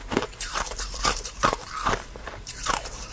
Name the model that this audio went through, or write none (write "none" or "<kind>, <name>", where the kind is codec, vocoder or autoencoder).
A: vocoder, BigVGAN v2